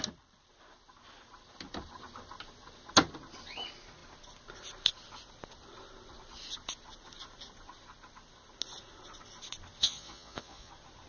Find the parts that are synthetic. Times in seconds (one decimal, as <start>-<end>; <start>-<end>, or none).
9.8-10.7